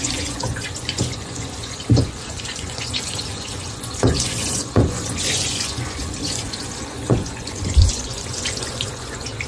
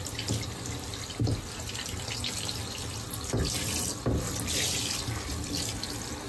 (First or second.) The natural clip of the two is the second